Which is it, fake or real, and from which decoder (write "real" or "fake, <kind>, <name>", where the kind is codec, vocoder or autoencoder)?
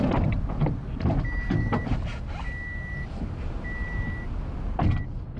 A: real